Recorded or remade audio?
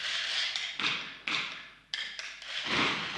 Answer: recorded